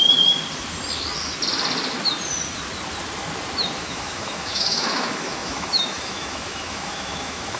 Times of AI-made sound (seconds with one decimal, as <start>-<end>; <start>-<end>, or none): 3.8-7.6